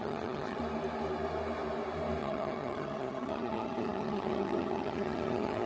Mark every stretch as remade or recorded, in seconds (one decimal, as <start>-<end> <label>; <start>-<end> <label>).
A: 0.0-0.6 remade; 0.6-2.2 recorded; 2.2-5.7 remade